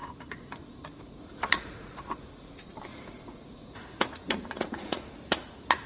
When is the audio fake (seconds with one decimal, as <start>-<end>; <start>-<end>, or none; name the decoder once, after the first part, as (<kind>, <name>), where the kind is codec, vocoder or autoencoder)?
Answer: 0.0-2.5 (vocoder, Vocos); 2.9-5.9